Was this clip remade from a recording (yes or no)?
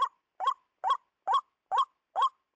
no